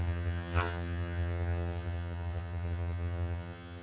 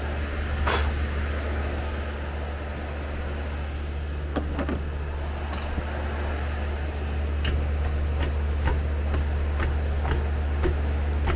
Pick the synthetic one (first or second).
first